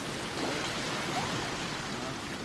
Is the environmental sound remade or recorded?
recorded